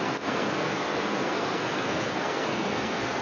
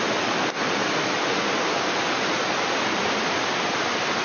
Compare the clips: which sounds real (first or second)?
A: second